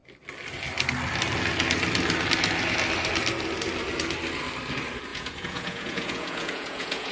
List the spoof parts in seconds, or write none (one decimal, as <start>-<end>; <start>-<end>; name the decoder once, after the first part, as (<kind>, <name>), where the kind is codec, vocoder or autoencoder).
5.1-7.1 (vocoder, Vocos)